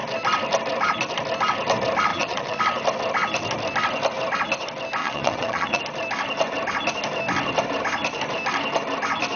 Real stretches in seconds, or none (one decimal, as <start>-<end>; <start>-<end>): 0.0-2.1; 2.6-5.0; 5.8-9.4